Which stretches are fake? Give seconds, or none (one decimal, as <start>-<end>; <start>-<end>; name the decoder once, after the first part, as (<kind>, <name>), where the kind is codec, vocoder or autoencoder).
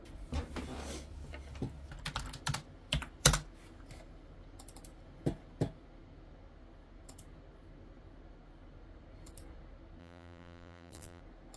10.0-11.2 (vocoder, BigVGAN v2)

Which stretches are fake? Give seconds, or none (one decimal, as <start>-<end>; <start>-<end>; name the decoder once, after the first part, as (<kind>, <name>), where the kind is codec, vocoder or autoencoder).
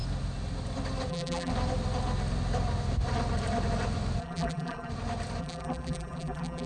1.1-1.5 (vocoder, BigVGAN v2); 4.2-4.9; 5.4-6.7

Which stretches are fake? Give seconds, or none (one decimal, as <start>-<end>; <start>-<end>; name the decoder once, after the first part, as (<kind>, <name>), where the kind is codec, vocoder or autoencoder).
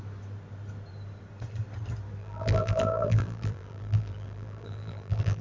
2.2-5.4 (vocoder, BigVGAN v2)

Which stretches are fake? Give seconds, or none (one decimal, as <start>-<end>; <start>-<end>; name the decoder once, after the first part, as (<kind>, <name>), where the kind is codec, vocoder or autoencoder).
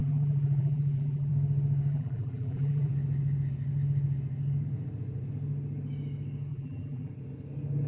0.0-1.3 (vocoder, BigVGAN v2); 1.9-2.9; 6.5-7.1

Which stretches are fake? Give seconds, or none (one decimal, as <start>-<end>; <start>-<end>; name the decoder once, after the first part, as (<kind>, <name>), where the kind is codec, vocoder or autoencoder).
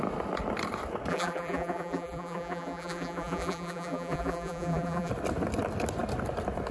1.1-5.1 (vocoder, BigVGAN v2)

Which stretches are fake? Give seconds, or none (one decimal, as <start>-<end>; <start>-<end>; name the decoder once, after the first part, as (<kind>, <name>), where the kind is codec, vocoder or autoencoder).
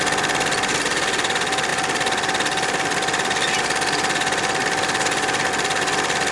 none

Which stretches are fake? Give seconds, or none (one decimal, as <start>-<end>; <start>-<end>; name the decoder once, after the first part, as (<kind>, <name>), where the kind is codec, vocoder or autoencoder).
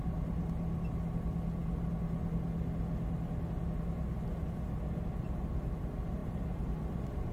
none